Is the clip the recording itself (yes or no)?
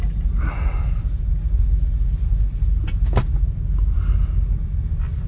yes